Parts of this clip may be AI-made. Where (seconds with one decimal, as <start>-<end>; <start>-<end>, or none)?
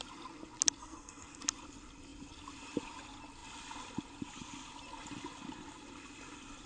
0.8-1.4